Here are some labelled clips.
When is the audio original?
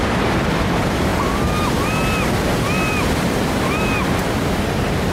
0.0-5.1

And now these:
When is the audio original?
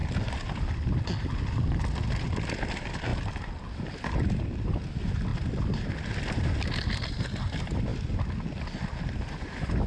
0.0-9.9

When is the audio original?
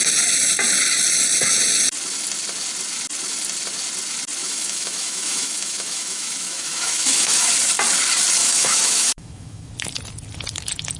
0.0-4.4; 7.5-8.4; 9.7-11.0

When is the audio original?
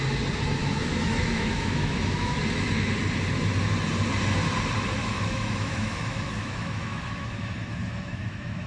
0.0-0.6; 2.9-5.0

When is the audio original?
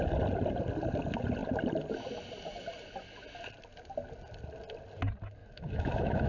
0.0-5.4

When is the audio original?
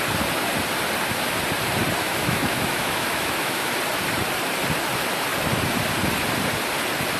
0.0-2.0; 3.7-7.2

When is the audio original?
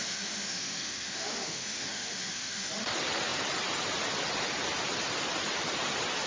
2.7-6.3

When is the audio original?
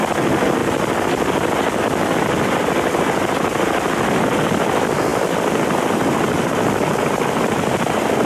0.0-8.3